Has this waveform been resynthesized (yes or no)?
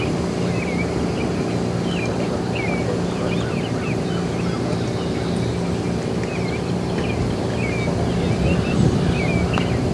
no